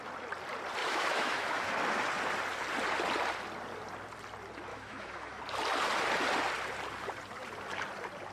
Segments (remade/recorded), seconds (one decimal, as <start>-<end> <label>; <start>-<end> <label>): 0.0-0.8 recorded; 0.8-1.7 remade; 1.7-4.7 recorded; 4.7-5.4 remade; 5.4-8.3 recorded